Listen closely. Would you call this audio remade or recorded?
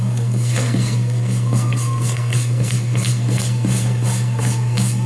remade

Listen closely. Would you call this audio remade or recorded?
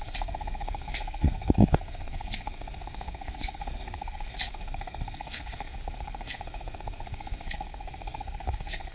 remade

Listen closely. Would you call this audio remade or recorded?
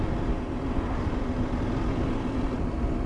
recorded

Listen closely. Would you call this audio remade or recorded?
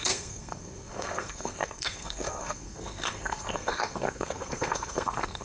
remade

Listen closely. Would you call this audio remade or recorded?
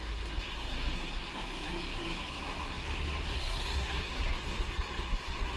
remade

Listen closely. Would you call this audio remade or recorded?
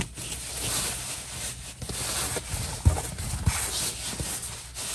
recorded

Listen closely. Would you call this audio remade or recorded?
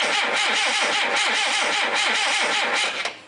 recorded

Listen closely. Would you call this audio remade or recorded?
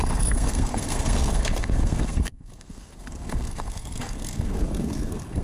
remade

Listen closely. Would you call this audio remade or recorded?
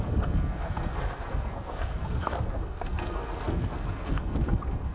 remade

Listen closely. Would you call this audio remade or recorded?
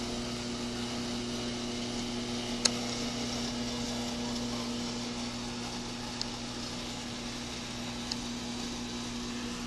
recorded